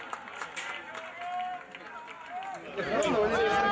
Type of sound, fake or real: real